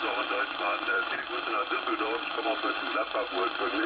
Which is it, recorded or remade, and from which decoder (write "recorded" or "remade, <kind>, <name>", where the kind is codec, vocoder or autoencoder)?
remade, vocoder, BigVGAN v2